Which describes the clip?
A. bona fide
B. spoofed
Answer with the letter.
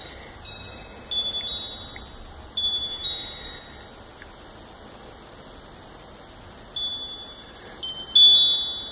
A